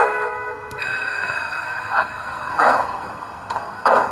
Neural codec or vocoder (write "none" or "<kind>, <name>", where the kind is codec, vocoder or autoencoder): codec, SNAC